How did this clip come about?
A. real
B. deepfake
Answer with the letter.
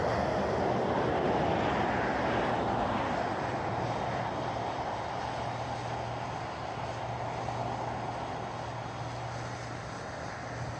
A